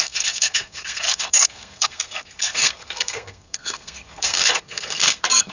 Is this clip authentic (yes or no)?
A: no